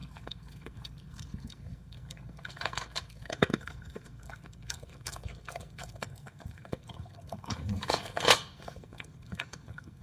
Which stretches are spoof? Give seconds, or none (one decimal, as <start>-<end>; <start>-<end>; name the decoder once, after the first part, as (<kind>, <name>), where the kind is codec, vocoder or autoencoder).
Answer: 0.0-10.0 (codec, SNAC)